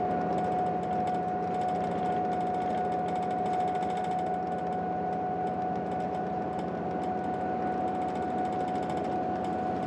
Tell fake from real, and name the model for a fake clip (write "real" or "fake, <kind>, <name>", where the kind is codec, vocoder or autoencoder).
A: real